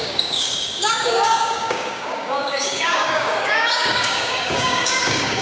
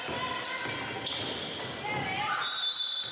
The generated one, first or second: first